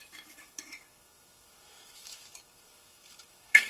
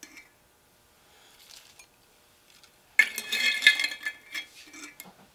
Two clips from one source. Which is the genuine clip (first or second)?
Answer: second